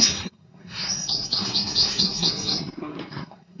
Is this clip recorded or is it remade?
remade